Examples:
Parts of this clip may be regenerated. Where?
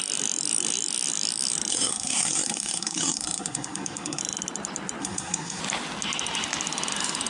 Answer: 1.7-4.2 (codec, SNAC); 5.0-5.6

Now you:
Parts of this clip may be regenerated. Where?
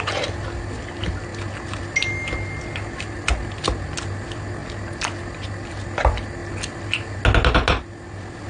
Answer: none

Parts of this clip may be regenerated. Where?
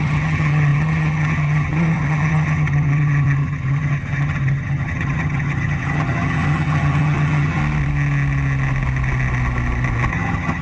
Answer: 0.0-7.6 (vocoder, HiFi-GAN); 10.1-10.6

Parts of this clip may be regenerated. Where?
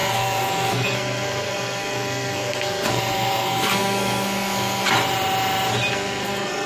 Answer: 0.0-4.8 (codec, SNAC); 5.9-6.7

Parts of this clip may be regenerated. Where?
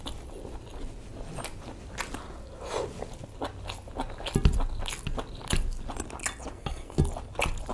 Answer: 6.5-7.0 (codec, SNAC)